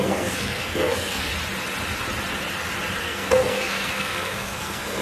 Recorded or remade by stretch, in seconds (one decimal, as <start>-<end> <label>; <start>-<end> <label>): 0.0-1.3 remade; 1.3-3.0 recorded; 3.0-5.0 remade